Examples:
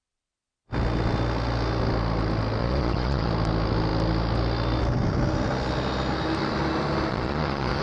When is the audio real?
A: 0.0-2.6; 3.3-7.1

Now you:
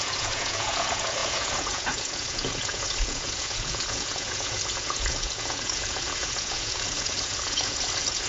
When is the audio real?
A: none

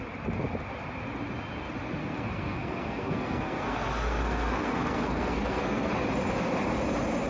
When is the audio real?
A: 0.0-2.0; 5.9-7.3

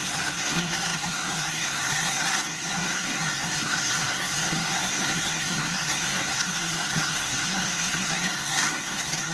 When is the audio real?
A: none

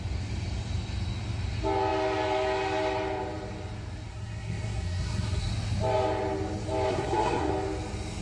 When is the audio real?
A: 0.0-4.1; 5.5-6.9; 7.5-8.2

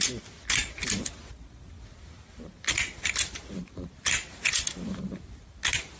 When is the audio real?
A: 0.0-6.0

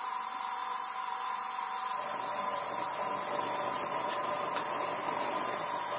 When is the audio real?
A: 0.0-6.0

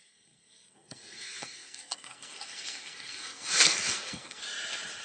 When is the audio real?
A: 4.4-5.0